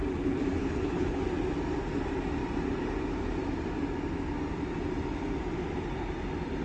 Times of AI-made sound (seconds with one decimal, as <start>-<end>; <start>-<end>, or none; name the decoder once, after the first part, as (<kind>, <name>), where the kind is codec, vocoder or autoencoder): 0.6-1.2 (codec, HILCodec)